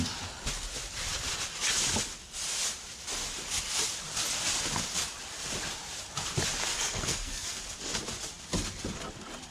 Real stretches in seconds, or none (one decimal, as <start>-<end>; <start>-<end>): 0.0-6.7; 7.6-9.5